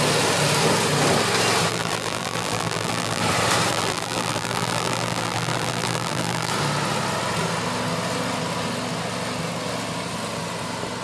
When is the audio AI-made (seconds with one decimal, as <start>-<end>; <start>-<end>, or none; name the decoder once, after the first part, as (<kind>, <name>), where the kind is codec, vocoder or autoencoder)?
1.7-3.2 (vocoder, BigVGAN v2); 3.7-6.5